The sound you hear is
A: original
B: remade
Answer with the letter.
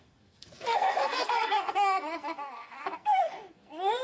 B